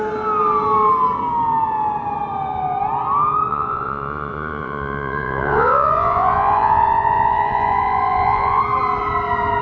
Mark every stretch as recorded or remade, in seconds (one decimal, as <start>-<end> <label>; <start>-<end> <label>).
0.0-3.5 recorded; 3.5-8.6 remade; 8.6-9.6 recorded

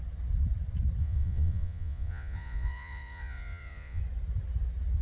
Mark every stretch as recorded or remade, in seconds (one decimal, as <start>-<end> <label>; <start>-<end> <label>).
0.0-1.0 recorded; 1.0-4.0 remade; 4.0-5.0 recorded

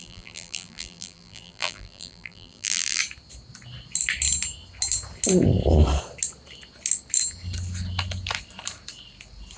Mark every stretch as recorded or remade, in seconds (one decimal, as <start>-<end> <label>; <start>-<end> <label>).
0.0-3.0 remade; 3.0-9.6 recorded

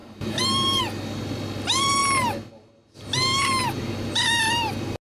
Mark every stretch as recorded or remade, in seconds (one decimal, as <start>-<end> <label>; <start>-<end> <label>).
0.0-0.8 remade; 0.8-5.0 recorded

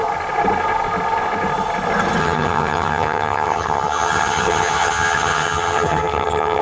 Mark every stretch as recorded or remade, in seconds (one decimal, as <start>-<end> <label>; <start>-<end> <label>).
0.0-2.2 recorded; 2.2-6.6 remade